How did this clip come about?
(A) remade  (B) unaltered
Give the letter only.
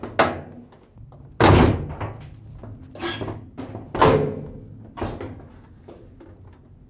B